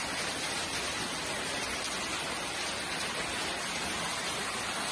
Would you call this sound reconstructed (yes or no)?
no